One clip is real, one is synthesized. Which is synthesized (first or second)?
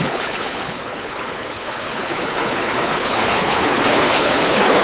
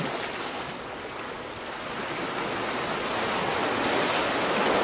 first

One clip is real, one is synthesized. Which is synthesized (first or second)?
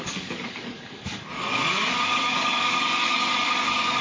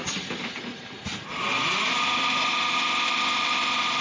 first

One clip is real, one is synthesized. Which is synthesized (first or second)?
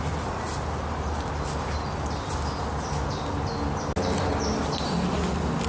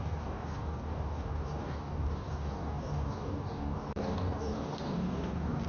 second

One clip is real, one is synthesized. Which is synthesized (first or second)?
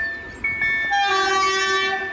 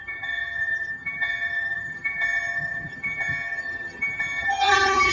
second